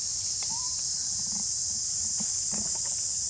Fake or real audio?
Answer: real